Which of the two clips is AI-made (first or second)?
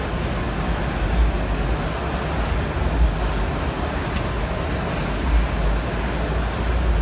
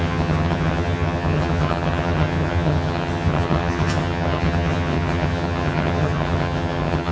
second